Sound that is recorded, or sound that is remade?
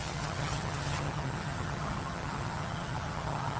remade